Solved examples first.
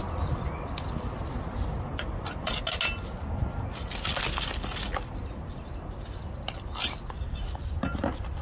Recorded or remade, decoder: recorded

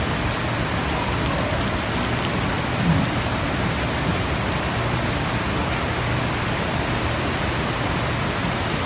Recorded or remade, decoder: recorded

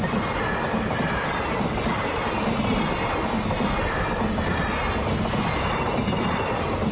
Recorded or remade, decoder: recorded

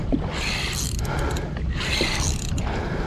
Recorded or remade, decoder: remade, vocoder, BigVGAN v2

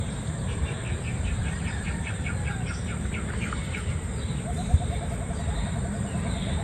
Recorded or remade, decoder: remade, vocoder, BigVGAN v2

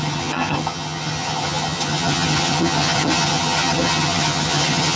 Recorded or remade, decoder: remade, vocoder, HiFi-GAN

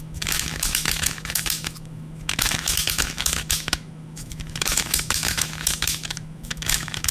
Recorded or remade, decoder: remade, autoencoder, DAC-VAE